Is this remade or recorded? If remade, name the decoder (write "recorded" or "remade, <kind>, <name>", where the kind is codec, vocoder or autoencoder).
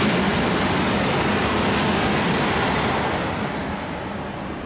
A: recorded